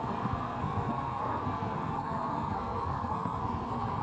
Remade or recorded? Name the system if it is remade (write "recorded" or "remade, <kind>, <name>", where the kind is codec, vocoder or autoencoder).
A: remade, codec, SNAC